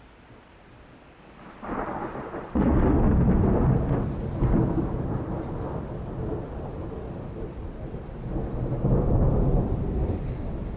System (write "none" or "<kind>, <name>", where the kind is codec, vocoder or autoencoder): none